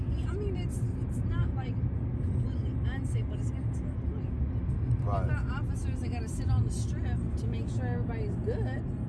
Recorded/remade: recorded